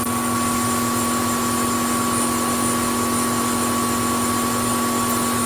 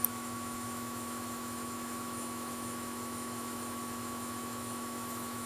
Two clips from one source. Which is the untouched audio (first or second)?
first